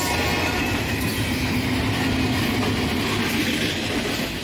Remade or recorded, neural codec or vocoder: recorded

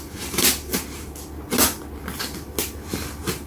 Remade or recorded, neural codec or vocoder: recorded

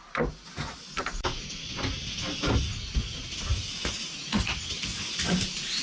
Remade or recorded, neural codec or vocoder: recorded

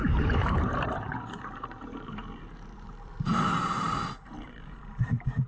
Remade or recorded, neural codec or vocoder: remade, vocoder, BigVGAN v2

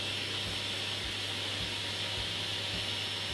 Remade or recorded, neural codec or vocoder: recorded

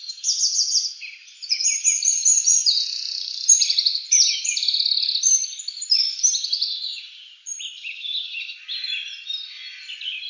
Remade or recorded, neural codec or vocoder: remade, vocoder, BigVGAN v2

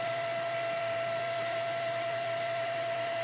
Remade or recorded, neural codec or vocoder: remade, vocoder, BigVGAN v2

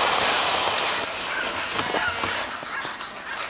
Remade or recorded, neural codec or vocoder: recorded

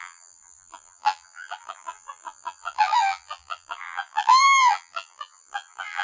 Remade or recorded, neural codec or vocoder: remade, vocoder, BigVGAN v2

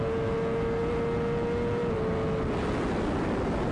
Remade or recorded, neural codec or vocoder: recorded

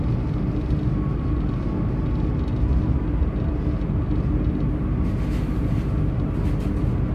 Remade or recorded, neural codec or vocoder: recorded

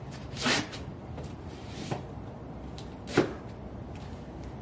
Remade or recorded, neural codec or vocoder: remade, vocoder, BigVGAN v2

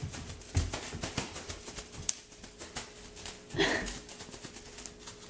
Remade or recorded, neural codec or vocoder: recorded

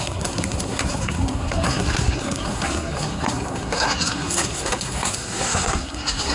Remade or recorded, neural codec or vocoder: remade, codec, SNAC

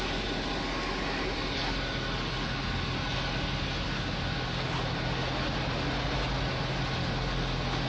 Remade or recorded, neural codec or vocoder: recorded